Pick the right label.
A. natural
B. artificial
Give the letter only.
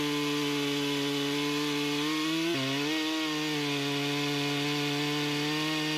A